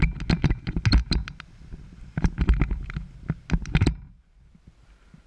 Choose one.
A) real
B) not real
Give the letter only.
A